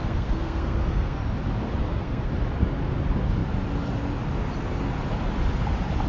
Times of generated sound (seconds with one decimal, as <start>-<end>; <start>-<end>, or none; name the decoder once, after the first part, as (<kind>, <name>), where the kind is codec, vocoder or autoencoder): 0.0-1.2 (codec, SNAC); 1.8-2.3